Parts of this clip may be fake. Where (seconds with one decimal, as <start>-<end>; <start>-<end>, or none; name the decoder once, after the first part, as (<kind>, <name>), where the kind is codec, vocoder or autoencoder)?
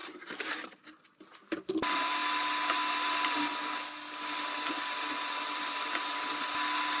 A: 0.0-1.0 (vocoder, BigVGAN v2)